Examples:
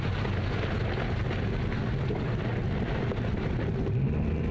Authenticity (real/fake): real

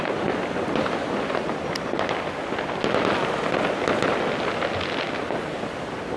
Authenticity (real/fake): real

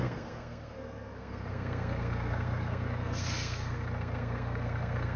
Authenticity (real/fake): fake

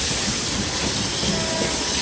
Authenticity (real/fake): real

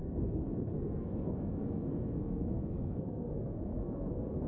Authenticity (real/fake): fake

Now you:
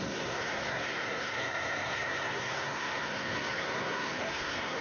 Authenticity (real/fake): fake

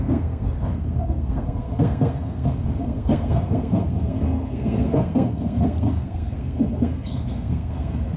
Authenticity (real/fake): fake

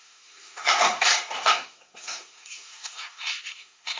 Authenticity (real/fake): fake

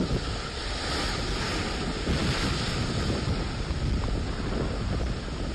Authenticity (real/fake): real